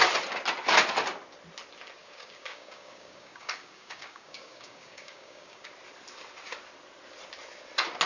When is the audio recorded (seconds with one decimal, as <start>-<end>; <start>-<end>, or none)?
0.0-2.0; 5.7-8.1